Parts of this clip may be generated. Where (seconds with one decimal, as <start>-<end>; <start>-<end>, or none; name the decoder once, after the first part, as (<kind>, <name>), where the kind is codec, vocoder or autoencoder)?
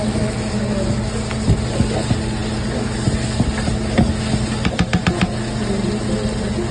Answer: none